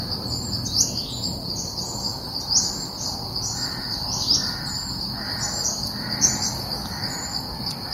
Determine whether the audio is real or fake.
real